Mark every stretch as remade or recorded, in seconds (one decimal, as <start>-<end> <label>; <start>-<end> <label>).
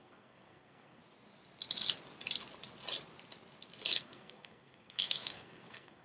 0.0-1.0 remade; 1.0-3.9 recorded; 3.9-6.0 remade